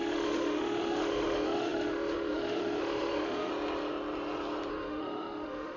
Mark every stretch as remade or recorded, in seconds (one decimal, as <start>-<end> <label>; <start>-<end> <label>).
0.0-3.5 remade; 3.5-4.7 recorded; 4.7-5.8 remade